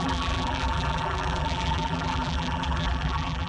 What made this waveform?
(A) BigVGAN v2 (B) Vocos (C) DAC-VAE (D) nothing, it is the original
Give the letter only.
A